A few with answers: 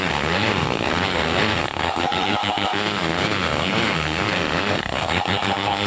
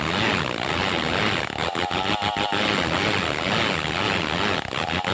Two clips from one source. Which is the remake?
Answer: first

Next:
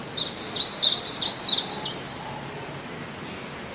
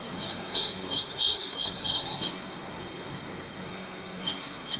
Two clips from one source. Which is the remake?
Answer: second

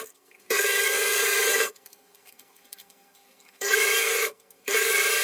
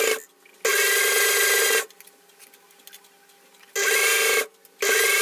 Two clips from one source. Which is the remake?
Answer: first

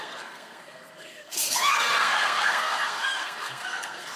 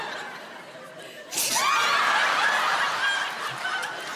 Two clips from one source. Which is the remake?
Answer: first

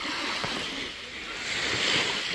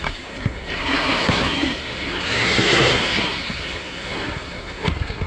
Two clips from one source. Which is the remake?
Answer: second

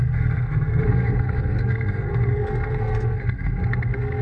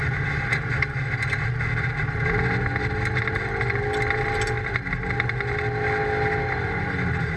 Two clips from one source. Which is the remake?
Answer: first